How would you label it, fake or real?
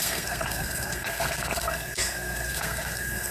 fake